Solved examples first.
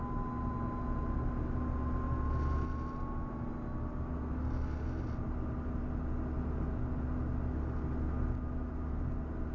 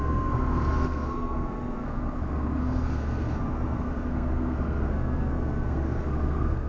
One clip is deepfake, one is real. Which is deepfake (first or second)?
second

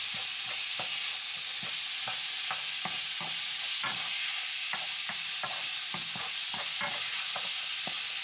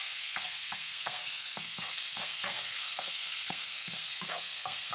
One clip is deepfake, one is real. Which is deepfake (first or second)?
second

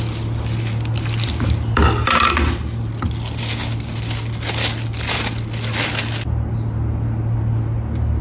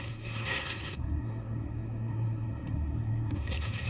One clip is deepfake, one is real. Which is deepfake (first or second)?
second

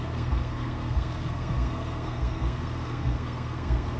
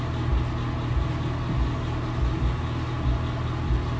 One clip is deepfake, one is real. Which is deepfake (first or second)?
first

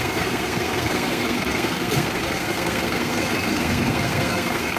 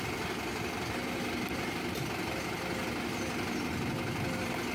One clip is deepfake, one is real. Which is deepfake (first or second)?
first